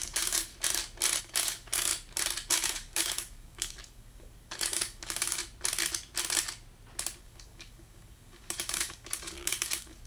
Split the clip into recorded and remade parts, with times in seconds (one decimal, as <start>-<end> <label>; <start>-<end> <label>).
0.0-0.5 remade; 0.5-1.2 recorded; 1.2-1.9 remade; 1.9-2.5 recorded; 2.5-5.4 remade; 5.4-7.2 recorded; 7.2-10.1 remade